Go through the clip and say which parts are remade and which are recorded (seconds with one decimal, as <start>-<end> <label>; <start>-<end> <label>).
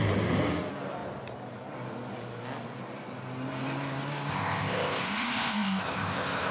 0.0-4.3 recorded; 4.3-6.5 remade